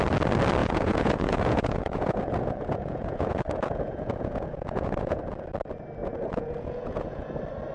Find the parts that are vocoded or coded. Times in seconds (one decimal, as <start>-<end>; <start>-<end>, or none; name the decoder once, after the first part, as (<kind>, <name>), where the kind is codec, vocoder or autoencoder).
0.6-5.2 (vocoder, Vocos); 6.0-7.3